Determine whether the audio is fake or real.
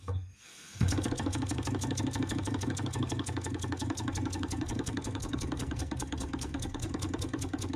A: fake